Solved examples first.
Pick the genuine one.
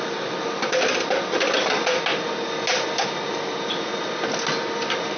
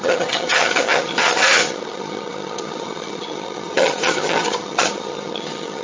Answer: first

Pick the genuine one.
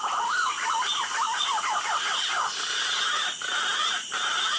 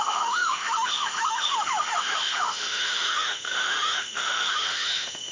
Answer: first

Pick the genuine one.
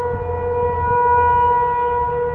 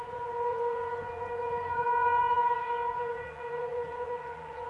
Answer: first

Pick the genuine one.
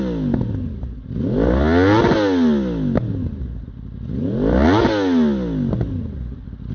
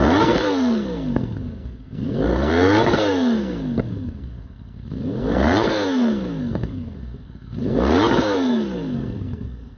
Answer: first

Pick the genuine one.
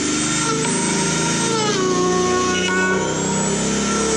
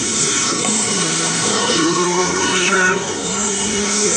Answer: first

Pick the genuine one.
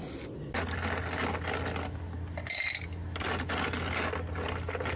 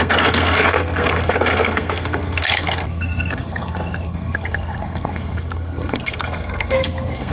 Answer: first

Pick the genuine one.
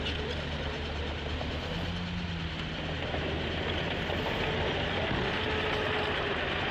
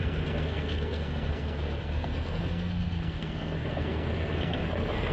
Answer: first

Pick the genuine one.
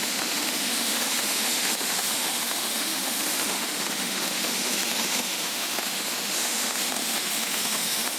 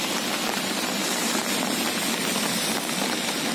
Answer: second